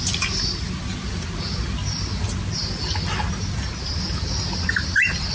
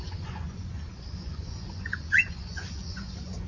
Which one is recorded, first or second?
first